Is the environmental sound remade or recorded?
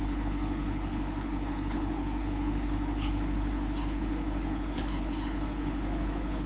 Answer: remade